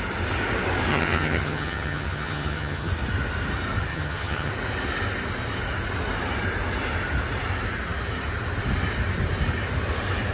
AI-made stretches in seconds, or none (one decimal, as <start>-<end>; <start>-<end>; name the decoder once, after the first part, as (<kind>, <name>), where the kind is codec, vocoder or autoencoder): 0.9-2.9 (vocoder, HiFi-GAN); 3.9-4.5

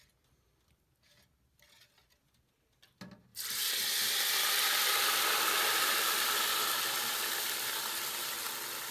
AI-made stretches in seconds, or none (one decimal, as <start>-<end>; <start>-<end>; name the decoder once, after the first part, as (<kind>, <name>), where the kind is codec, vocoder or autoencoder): 3.3-8.5 (vocoder, BigVGAN v2)

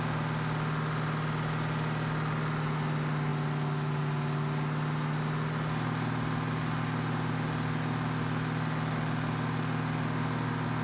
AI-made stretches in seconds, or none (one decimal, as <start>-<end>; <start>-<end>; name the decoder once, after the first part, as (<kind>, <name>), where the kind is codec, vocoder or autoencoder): none

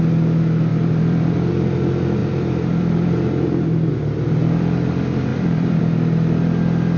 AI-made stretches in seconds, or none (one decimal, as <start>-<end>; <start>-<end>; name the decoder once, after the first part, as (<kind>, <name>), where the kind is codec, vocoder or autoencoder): 0.7-1.5 (vocoder, BigVGAN v2); 2.2-3.9; 5.3-5.8